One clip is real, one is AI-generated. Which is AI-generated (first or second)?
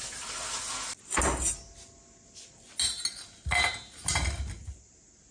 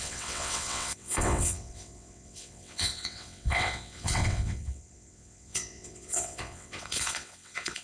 second